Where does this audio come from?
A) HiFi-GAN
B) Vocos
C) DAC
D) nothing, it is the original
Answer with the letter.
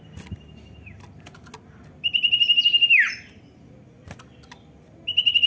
D